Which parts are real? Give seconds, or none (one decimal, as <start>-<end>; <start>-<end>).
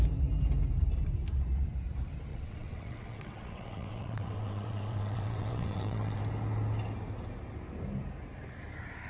0.0-2.3; 6.2-9.1